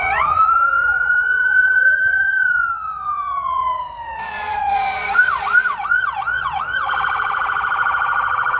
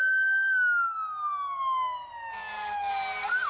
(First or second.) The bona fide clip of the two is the second